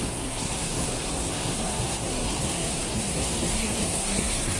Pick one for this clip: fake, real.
fake